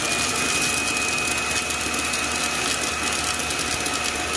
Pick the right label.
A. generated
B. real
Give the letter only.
B